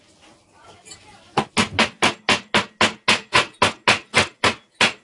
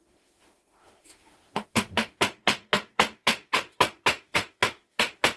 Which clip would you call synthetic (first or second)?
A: second